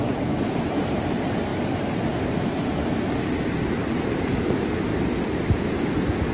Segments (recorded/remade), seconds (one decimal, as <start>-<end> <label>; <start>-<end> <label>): 0.0-1.5 recorded; 1.5-2.0 remade; 2.0-2.8 recorded; 2.8-4.3 remade; 4.3-6.3 recorded